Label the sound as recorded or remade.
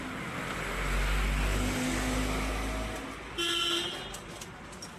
recorded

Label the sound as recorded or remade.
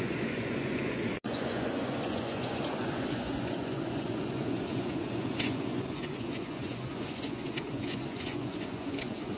remade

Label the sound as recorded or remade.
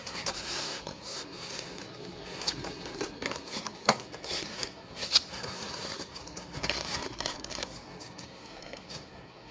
remade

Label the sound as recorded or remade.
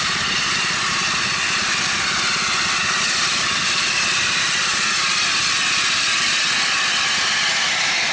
recorded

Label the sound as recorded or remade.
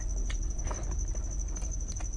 recorded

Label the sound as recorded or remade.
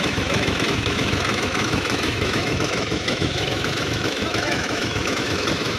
remade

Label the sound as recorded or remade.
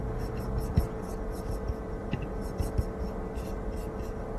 recorded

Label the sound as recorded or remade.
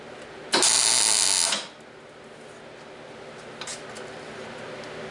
recorded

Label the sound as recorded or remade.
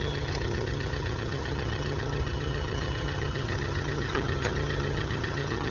remade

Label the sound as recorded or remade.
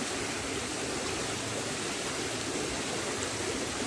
recorded